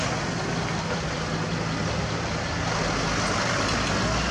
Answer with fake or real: real